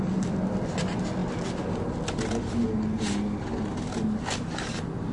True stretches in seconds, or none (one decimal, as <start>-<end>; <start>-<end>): 0.0-5.1